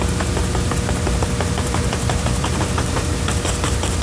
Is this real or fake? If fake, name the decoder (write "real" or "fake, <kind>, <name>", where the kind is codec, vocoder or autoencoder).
fake, vocoder, BigVGAN v2